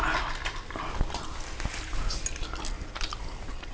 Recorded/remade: recorded